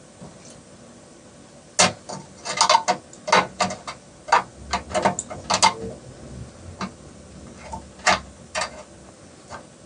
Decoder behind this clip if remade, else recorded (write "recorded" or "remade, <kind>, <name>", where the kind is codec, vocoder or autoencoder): recorded